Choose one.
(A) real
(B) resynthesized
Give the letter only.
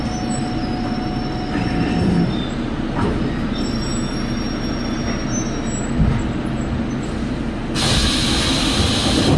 A